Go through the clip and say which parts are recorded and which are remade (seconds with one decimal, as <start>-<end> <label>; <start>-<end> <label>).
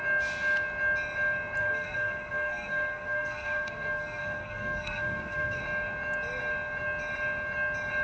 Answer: 0.0-1.6 recorded; 1.6-5.6 remade; 5.6-8.0 recorded